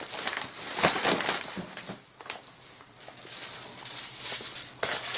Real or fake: real